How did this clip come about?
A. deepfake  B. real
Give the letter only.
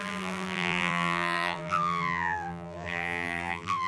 A